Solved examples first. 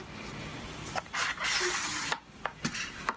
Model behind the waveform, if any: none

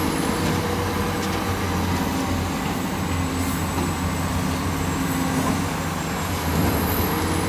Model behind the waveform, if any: none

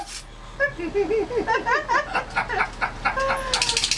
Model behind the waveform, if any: none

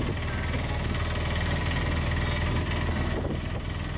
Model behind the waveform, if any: none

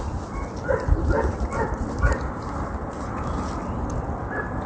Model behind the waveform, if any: none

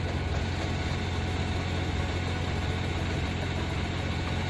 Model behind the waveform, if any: none